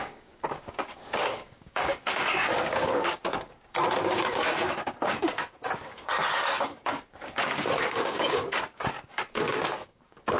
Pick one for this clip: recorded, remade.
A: remade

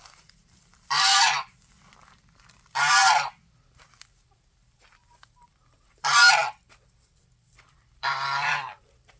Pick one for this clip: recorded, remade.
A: remade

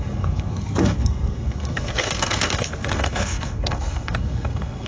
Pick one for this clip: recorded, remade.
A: remade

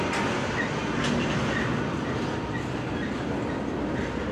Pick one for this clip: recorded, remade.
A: recorded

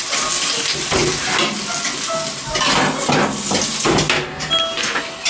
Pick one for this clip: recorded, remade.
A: recorded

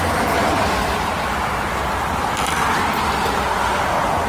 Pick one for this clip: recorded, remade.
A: recorded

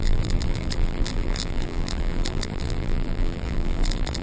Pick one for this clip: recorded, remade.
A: remade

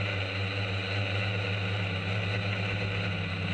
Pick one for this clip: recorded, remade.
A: recorded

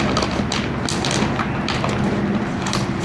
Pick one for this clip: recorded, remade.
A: recorded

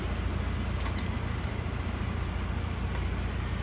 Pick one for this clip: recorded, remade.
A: recorded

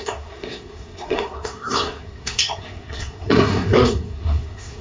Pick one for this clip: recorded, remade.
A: remade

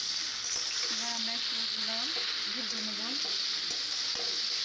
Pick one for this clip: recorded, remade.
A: recorded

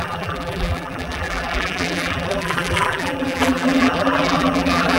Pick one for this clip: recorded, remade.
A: remade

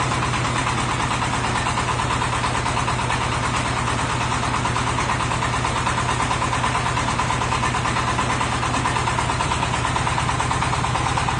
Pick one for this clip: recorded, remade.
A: recorded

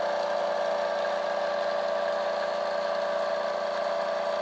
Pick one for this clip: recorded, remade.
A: recorded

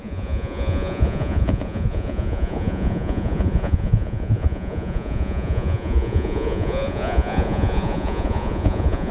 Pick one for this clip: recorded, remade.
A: remade